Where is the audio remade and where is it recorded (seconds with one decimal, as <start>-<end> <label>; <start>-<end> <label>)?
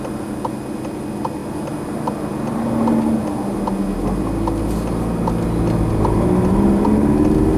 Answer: 0.0-7.6 recorded